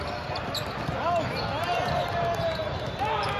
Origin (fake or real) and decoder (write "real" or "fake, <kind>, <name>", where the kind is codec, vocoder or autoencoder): real